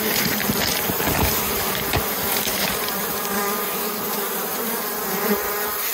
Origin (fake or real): fake